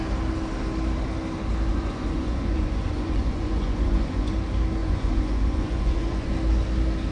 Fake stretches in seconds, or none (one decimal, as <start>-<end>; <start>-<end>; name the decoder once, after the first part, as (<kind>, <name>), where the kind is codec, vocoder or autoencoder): 1.7-4.3 (vocoder, Vocos); 4.8-6.3